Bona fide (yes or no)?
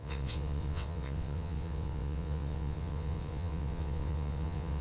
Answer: no